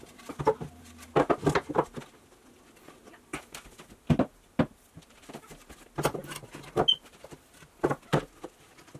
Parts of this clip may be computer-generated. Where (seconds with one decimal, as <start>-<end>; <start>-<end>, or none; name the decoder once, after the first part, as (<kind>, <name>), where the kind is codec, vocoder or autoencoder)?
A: none